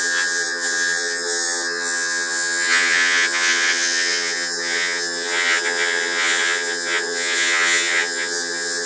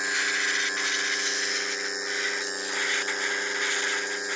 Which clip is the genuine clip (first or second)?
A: second